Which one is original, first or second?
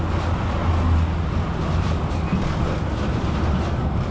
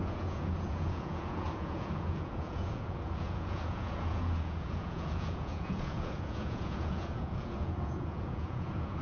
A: first